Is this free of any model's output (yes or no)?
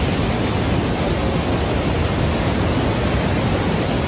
yes